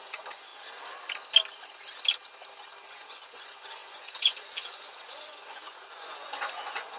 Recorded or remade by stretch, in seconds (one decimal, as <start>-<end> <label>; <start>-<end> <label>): 0.0-0.5 remade; 0.5-2.9 recorded; 2.9-7.0 remade